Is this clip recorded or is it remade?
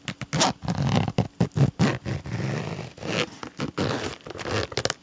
recorded